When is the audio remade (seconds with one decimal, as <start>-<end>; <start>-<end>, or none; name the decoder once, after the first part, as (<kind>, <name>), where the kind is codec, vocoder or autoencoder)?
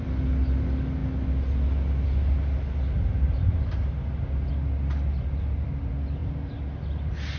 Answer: none